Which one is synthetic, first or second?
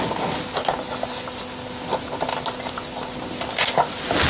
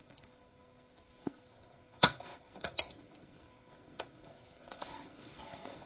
second